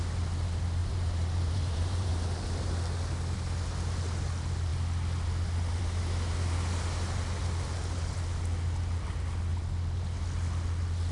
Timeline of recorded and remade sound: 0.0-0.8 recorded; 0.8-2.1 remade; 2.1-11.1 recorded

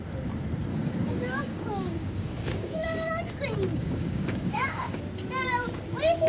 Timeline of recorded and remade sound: 0.0-0.7 recorded; 0.7-3.2 remade; 3.2-3.7 recorded; 3.7-5.0 remade; 5.0-6.3 recorded

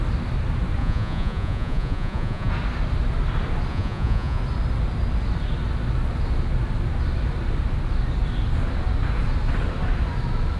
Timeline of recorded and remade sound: 0.0-0.8 recorded; 0.8-2.5 remade; 2.5-3.7 recorded; 3.7-4.4 remade; 4.4-10.6 recorded

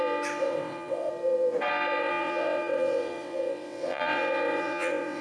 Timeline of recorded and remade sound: 0.0-0.4 recorded; 0.4-1.1 remade; 1.1-2.0 recorded; 2.0-5.2 remade

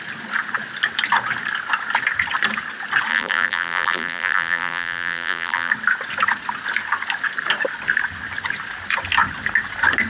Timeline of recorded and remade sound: 0.0-3.1 recorded; 3.1-5.7 remade; 5.7-10.1 recorded

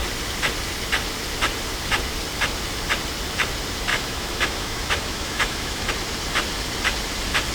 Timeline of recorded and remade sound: 0.0-3.9 recorded; 3.9-5.9 remade; 5.9-7.5 recorded

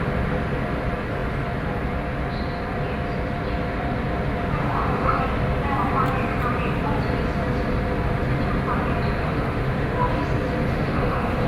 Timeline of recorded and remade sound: 0.0-4.6 recorded; 4.6-5.2 remade; 5.2-9.2 recorded; 9.2-10.2 remade; 10.2-10.7 recorded; 10.7-11.5 remade

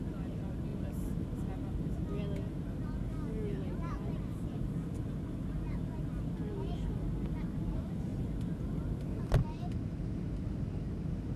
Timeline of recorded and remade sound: 0.0-0.7 recorded; 0.7-2.0 remade; 2.0-8.1 recorded; 8.1-9.2 remade; 9.2-11.4 recorded